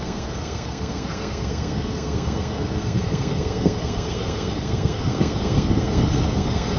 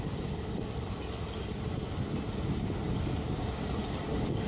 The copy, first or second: first